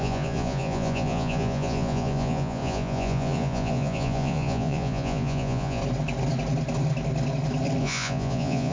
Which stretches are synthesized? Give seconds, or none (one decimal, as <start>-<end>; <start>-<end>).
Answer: 0.0-5.8; 7.8-8.7